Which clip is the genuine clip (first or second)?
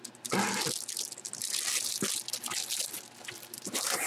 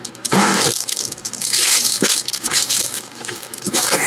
first